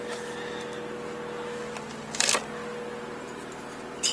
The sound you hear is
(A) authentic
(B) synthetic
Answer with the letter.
A